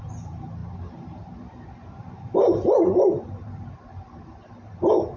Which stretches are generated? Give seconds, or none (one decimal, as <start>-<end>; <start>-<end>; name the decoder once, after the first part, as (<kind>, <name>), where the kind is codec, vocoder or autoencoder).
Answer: 0.6-3.7 (vocoder, BigVGAN v2)